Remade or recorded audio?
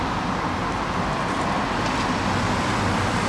recorded